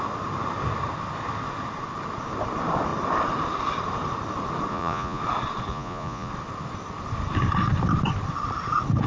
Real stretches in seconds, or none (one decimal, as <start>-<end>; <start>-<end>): 0.0-4.7; 5.2-5.7; 6.3-9.1